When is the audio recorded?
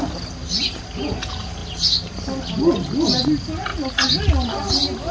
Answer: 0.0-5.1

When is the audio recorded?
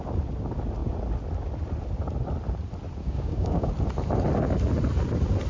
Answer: 0.0-3.0; 3.7-5.5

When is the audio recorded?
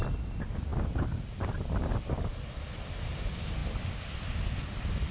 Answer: 0.0-5.1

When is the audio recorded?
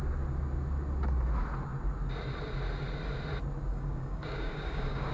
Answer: 0.0-3.7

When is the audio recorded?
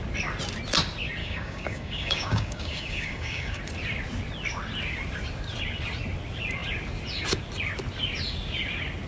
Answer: 0.0-1.2; 3.6-9.1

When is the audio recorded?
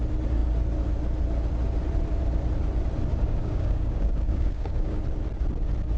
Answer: 0.0-3.1; 5.0-6.0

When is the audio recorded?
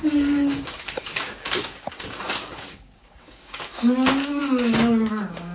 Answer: 4.4-5.1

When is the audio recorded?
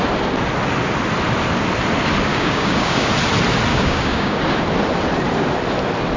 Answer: 0.0-2.3; 3.1-3.7; 4.4-6.2